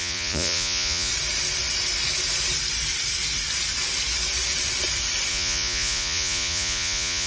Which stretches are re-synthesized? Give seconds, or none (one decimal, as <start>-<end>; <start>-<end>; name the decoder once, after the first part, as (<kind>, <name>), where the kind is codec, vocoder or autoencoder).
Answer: 0.0-1.1 (vocoder, Vocos); 5.3-7.3